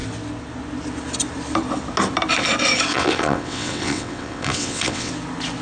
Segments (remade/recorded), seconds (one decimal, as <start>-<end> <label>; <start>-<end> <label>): 0.0-2.9 recorded; 2.9-5.1 remade; 5.1-5.6 recorded